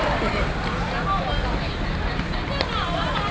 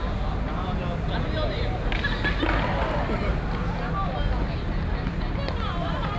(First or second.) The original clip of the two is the second